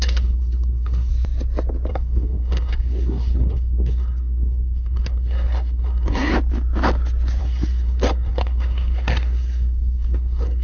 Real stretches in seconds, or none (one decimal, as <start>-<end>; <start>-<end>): 1.1-1.9; 6.3-7.4